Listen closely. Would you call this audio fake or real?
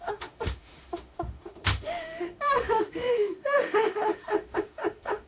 fake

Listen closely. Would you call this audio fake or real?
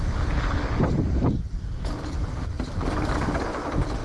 real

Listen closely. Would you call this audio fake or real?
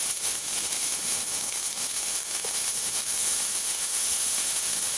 fake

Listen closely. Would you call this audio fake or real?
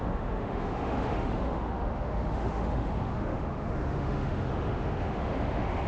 fake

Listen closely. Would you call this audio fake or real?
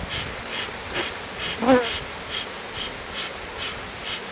real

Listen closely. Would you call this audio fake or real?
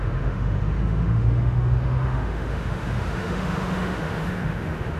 fake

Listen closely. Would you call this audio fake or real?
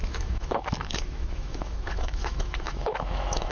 fake